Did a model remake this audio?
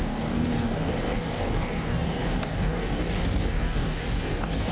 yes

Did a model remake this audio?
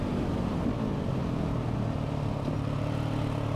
no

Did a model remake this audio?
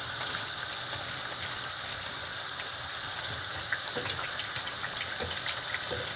no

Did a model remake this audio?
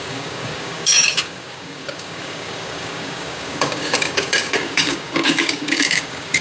yes